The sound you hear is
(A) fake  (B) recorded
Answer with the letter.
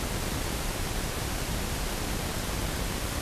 B